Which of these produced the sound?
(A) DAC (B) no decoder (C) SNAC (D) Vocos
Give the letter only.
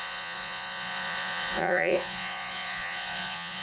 D